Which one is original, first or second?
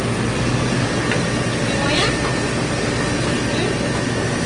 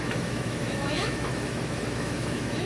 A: first